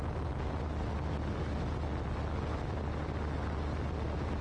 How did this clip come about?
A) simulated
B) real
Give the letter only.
B